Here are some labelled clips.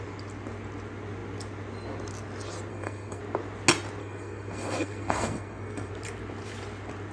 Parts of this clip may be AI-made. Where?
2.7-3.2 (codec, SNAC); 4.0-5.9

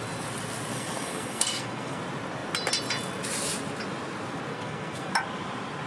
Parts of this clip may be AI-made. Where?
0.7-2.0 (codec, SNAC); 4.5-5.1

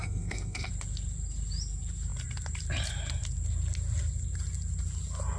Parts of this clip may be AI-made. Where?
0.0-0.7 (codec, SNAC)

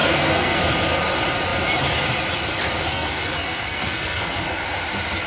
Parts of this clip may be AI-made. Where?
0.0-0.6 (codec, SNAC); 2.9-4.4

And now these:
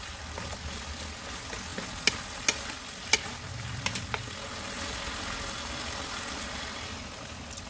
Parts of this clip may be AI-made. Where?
none

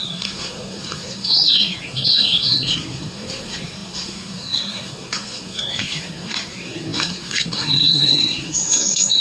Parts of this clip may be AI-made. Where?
0.0-9.2 (codec, SNAC)

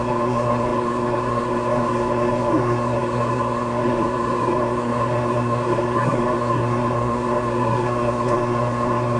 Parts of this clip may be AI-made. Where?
0.0-9.2 (codec, SNAC)

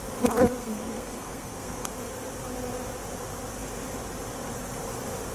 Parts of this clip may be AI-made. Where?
0.6-1.9 (codec, SNAC)